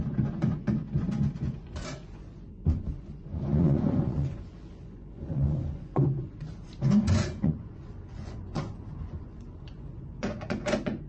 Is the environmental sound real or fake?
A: fake